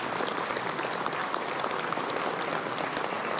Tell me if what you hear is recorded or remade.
remade